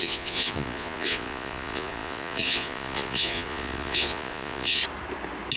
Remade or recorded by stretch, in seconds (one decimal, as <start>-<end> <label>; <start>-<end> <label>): 0.0-4.8 remade; 4.8-5.6 recorded